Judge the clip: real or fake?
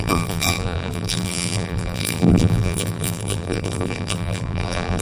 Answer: fake